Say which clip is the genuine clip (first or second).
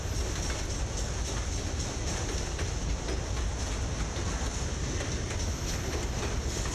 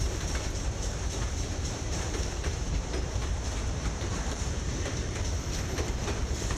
first